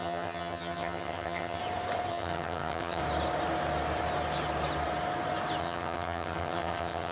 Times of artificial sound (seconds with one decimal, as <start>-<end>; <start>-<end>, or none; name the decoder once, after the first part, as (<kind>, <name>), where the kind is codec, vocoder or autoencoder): 0.0-1.6 (vocoder, HiFi-GAN); 2.1-3.0; 5.6-7.1

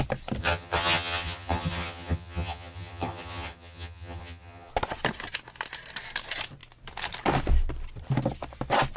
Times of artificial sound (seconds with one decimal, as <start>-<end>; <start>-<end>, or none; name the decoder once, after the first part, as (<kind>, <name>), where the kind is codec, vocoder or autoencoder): 0.4-4.7 (vocoder, HiFi-GAN)

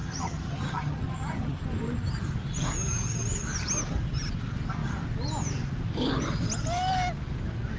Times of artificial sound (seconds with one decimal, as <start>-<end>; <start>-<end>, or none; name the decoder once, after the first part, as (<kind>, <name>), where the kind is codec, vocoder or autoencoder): 0.0-1.6 (vocoder, HiFi-GAN)

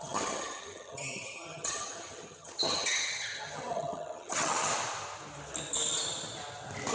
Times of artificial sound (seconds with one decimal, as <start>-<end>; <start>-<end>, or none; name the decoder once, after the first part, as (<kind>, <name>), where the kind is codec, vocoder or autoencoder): 0.0-4.7 (vocoder, HiFi-GAN)

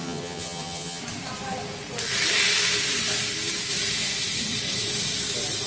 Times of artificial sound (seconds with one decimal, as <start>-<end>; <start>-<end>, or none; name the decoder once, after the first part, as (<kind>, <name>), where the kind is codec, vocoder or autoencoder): 0.0-1.0 (vocoder, HiFi-GAN)

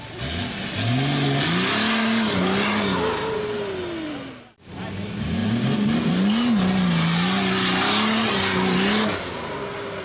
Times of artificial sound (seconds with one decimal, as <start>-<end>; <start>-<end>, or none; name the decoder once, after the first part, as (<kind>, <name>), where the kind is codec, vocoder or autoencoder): none